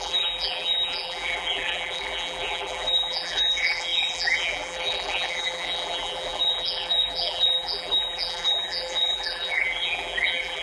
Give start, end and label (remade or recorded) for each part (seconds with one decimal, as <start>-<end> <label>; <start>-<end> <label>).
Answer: 0.0-10.6 remade